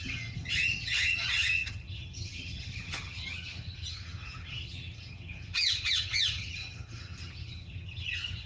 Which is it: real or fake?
fake